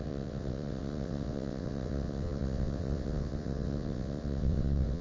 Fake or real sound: fake